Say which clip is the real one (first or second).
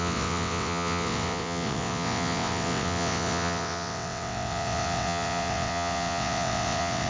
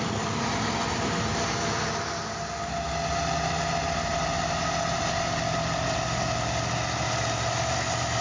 second